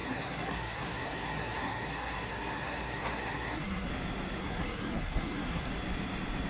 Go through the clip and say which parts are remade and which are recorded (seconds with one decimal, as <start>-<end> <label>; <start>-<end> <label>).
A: 0.0-3.9 remade; 3.9-4.4 recorded; 4.4-5.7 remade; 5.7-6.5 recorded